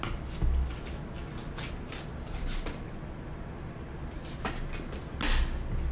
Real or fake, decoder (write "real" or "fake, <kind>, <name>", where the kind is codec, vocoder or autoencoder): real